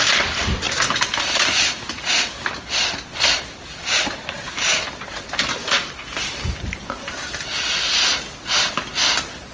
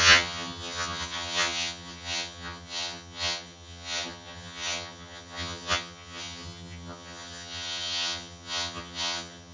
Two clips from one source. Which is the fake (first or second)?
second